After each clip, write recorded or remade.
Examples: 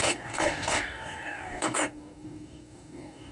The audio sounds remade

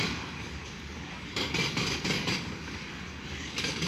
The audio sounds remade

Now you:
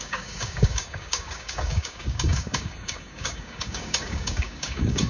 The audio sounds remade